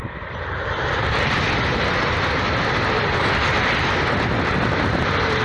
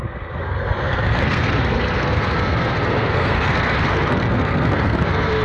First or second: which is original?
first